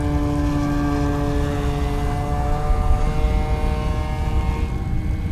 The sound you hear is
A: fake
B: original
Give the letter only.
B